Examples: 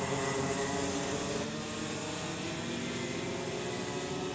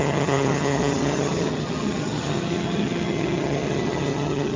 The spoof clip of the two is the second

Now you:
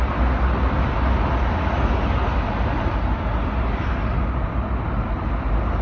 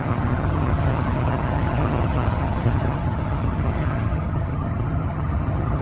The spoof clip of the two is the second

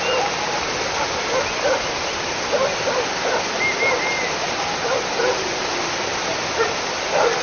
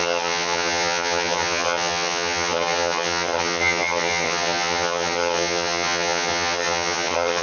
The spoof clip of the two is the second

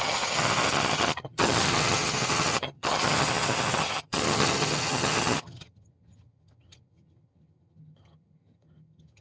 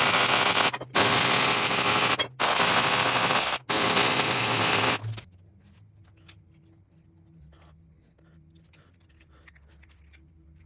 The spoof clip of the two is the first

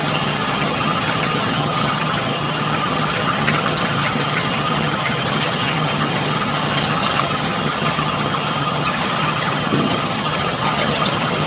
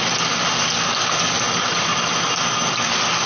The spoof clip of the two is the first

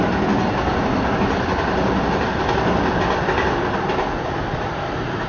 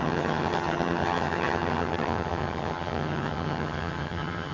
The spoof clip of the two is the second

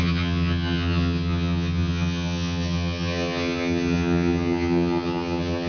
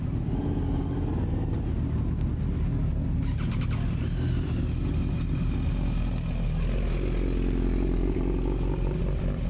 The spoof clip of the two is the first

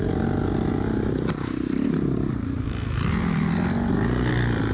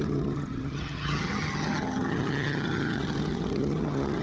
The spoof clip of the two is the second